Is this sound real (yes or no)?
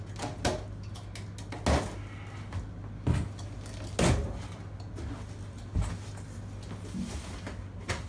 yes